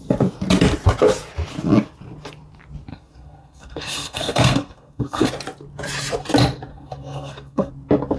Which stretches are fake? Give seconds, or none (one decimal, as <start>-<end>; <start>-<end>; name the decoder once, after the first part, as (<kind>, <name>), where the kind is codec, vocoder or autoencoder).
2.9-5.3 (codec, SNAC); 6.7-7.7